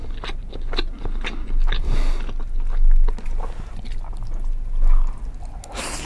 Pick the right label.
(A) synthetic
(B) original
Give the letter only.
B